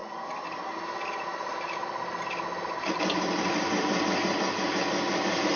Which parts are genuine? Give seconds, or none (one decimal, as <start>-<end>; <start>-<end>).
0.0-5.6